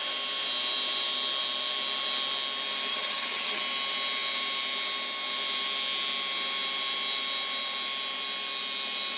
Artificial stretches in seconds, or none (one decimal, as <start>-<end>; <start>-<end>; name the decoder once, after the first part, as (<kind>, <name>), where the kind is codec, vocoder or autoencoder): 2.9-3.6 (vocoder, HiFi-GAN)